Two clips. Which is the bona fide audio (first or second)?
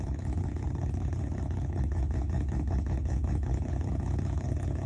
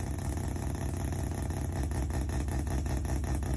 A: second